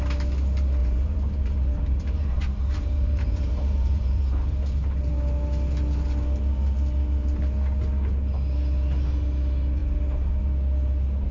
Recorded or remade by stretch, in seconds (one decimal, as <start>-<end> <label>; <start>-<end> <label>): 0.0-0.8 recorded; 0.8-4.2 remade; 4.2-11.3 recorded